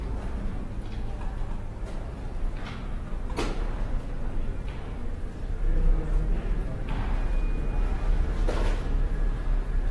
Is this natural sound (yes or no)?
yes